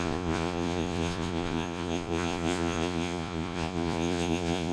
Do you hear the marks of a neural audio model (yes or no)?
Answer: yes